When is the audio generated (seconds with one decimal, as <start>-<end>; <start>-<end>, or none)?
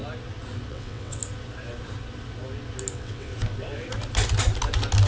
0.7-1.2; 2.9-3.3